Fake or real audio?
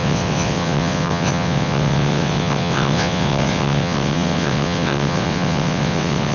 fake